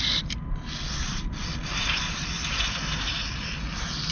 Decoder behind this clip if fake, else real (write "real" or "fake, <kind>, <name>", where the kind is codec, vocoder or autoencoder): real